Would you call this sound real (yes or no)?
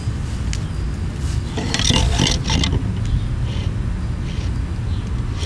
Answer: yes